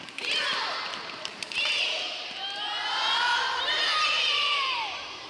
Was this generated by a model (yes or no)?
yes